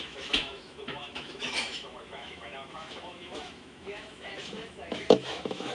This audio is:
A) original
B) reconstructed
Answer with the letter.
B